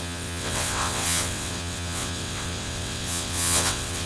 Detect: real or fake fake